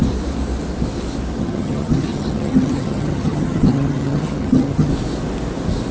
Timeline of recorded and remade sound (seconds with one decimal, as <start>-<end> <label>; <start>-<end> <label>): 0.0-1.4 recorded; 1.4-4.9 remade; 4.9-5.9 recorded